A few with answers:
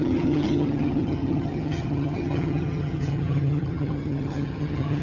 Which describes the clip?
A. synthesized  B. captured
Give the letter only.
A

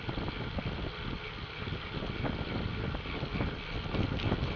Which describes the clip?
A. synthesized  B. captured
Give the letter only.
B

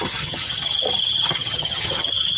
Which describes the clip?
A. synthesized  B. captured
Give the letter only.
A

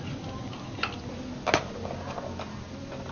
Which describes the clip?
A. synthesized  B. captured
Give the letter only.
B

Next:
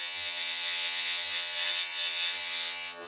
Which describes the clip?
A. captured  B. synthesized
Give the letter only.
B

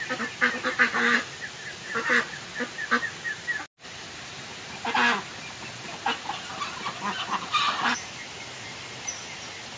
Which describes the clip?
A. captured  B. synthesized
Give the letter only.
A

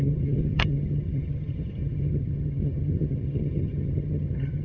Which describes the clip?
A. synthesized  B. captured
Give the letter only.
A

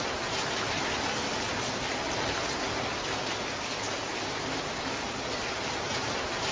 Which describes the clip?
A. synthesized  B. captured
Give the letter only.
B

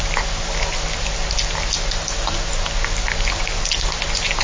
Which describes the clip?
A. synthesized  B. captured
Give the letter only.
B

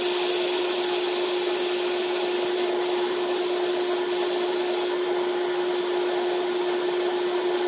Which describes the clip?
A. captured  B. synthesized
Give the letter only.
A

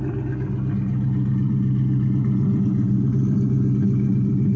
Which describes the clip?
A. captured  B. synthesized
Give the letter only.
A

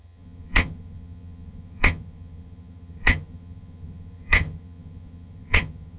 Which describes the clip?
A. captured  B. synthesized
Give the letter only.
B